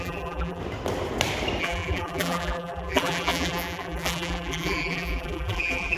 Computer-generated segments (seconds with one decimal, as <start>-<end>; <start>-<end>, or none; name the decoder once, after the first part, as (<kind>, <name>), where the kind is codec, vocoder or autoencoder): 0.0-0.6 (vocoder, BigVGAN v2); 1.6-6.0